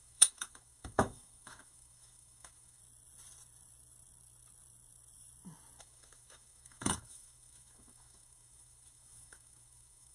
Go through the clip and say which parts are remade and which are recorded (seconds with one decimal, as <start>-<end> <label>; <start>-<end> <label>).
0.0-2.8 remade; 2.8-5.8 recorded; 5.8-10.1 remade